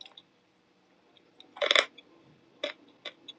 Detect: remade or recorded recorded